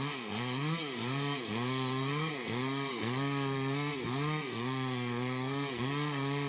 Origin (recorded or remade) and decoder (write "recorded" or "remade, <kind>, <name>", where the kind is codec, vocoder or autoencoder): remade, codec, SNAC